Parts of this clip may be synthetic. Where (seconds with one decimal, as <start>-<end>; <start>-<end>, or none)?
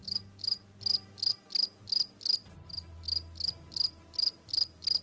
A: none